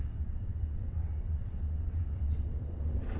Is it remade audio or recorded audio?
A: remade